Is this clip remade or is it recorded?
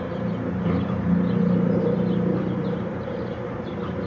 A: remade